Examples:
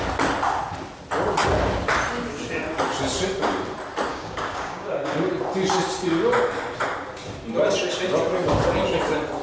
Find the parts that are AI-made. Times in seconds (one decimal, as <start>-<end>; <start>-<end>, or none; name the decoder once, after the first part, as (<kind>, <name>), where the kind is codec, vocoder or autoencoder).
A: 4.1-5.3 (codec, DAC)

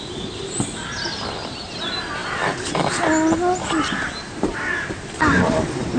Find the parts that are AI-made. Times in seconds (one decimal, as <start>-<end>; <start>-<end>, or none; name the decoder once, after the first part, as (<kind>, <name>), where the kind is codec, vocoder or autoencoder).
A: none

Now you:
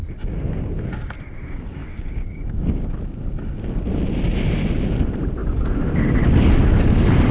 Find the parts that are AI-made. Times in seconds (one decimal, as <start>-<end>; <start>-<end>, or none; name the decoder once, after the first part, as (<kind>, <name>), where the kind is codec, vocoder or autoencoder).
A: 1.8-3.0 (codec, DAC)

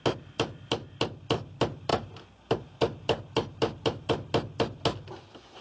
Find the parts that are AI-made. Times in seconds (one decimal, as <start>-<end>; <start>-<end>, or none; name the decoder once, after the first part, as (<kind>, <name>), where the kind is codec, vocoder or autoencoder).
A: none

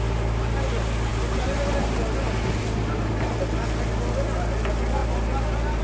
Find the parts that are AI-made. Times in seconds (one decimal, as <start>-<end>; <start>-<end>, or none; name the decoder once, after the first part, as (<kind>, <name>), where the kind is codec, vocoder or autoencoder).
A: none

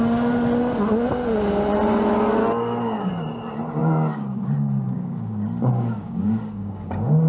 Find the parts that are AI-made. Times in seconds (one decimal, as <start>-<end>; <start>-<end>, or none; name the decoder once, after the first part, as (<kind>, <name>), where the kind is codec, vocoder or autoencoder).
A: 2.4-3.1 (codec, DAC); 3.8-7.3